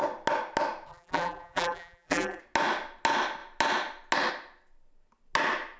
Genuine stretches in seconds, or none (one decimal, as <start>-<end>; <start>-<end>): 0.0-0.9; 2.4-5.8